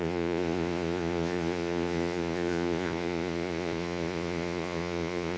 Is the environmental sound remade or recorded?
remade